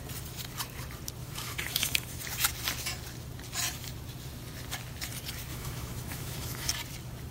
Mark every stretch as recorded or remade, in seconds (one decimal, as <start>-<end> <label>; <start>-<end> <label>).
0.0-1.2 recorded; 1.2-2.2 remade; 2.2-5.5 recorded; 5.5-6.7 remade; 6.7-7.3 recorded